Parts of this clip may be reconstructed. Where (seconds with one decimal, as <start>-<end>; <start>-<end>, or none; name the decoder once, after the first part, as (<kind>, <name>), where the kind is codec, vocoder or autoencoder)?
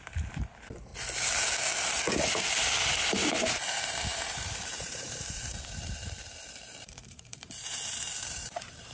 0.0-0.9 (vocoder, BigVGAN v2); 2.5-8.9